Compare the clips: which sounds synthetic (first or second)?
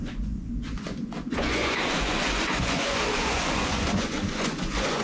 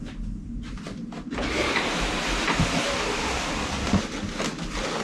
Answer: first